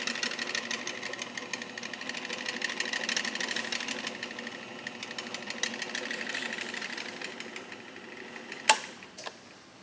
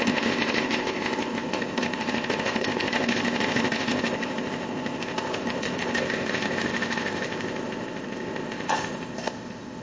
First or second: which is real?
first